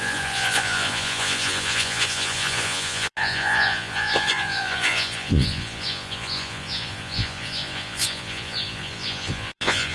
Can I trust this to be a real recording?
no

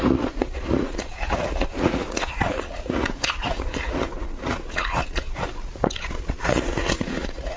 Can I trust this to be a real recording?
no